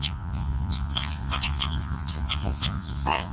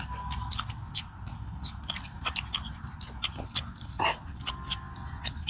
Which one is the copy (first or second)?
first